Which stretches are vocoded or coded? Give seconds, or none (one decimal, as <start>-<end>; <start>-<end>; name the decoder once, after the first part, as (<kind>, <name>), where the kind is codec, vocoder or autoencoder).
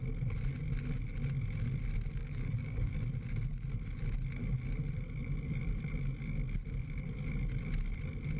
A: 2.2-2.9 (codec, DAC)